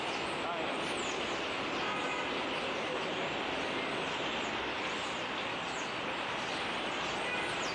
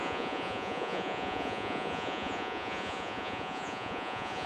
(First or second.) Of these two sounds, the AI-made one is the second